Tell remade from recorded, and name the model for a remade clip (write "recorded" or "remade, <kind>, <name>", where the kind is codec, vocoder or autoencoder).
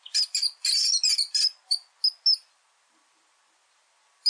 recorded